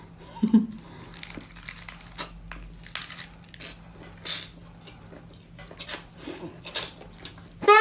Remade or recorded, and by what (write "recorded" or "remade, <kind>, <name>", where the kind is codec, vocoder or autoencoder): recorded